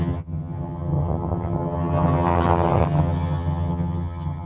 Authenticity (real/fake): fake